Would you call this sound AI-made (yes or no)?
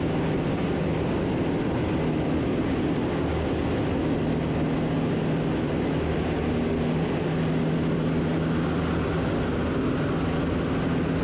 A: no